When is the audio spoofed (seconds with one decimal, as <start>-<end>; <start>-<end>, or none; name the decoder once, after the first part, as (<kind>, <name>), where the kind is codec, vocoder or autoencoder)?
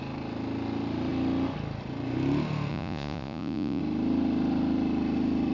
2.7-3.8 (vocoder, Vocos)